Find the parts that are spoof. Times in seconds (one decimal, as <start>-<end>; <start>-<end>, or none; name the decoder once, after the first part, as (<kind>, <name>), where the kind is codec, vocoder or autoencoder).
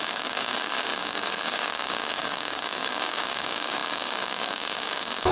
0.0-5.3 (codec, DAC)